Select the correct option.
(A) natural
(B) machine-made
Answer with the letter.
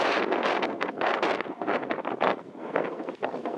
B